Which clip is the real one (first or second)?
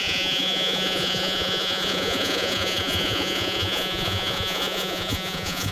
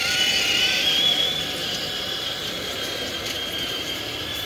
second